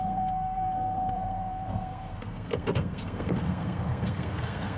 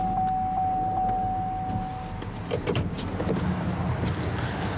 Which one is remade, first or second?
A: first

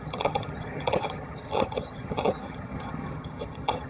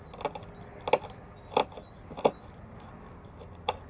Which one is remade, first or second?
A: first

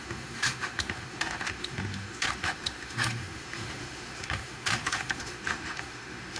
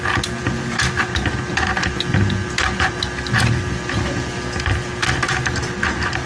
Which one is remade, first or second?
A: first